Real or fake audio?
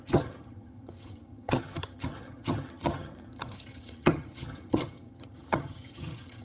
fake